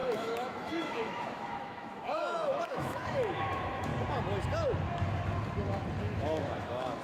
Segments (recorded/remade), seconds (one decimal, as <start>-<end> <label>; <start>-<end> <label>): 0.0-3.9 remade; 3.9-6.0 recorded; 6.0-7.0 remade